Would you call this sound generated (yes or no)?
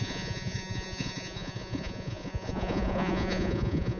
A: yes